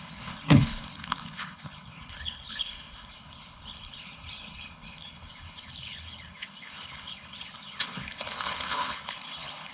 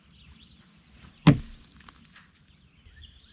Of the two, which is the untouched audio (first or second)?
second